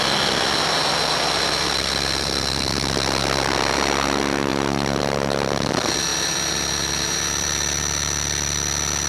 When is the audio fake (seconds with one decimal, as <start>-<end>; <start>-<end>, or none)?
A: 4.5-5.0; 6.1-7.8